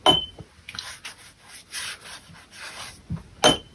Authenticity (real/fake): real